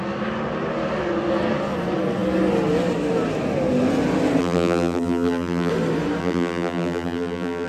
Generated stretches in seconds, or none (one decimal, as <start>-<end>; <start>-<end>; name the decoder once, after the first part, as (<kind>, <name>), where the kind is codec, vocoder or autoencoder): 4.4-5.7 (vocoder, BigVGAN v2); 6.2-7.7